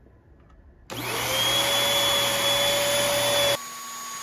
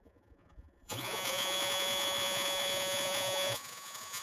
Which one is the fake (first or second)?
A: second